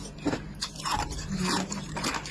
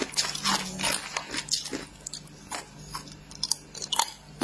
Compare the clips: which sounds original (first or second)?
second